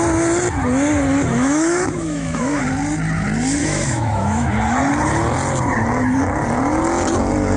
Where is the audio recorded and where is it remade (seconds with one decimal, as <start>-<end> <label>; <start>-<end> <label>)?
0.0-1.3 recorded; 1.3-2.6 remade; 2.6-3.6 recorded; 3.6-4.5 remade; 4.5-7.6 recorded